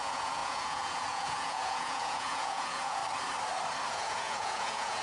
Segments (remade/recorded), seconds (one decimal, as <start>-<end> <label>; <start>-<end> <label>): 0.0-3.0 remade; 3.0-3.9 recorded; 3.9-5.0 remade